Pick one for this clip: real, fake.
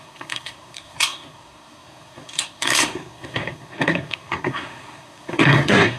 fake